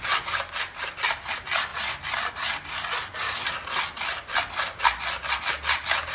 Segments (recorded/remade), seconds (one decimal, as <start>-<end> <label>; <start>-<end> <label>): 0.0-6.1 recorded